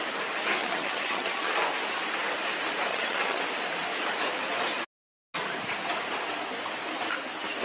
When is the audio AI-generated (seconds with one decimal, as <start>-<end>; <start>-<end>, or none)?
0.6-1.5; 2.9-3.4